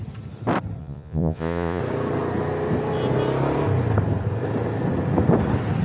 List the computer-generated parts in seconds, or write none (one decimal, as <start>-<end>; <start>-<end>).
0.8-1.8